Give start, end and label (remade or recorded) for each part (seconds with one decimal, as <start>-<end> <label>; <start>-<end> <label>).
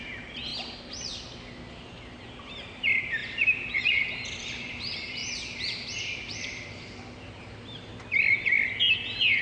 0.0-0.5 remade; 0.5-2.3 recorded; 2.3-5.2 remade; 5.2-6.0 recorded; 6.0-7.9 remade; 7.9-9.4 recorded